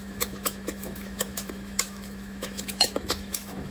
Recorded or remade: remade